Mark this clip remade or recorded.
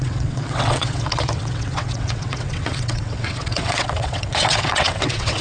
remade